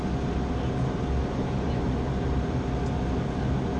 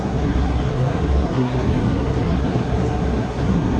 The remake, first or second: second